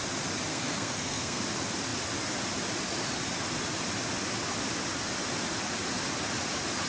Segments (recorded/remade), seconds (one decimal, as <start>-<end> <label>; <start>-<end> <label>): 0.0-0.5 recorded; 0.5-1.4 remade; 1.4-6.9 recorded